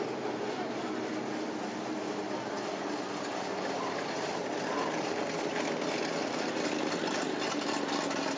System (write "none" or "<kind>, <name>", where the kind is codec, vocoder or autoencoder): none